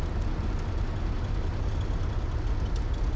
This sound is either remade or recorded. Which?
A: recorded